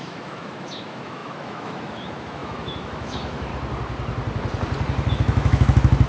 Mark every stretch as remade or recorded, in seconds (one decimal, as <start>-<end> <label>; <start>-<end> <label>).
0.0-3.5 remade; 3.5-5.1 recorded; 5.1-6.1 remade